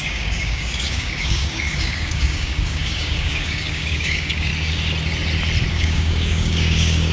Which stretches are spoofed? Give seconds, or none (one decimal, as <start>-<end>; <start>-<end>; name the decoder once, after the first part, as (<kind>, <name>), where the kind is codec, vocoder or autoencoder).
0.0-4.5 (codec, DAC); 5.7-7.1